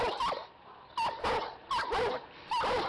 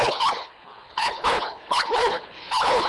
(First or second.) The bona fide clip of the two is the first